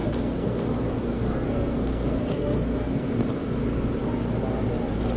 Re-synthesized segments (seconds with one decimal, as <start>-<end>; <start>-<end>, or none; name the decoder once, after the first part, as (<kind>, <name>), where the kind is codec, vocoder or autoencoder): 0.0-3.1 (codec, SNAC)